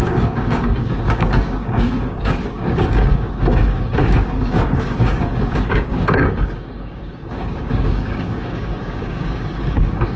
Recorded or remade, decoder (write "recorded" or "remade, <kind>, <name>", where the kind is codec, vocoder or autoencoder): remade, codec, DAC